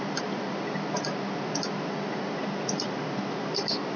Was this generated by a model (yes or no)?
no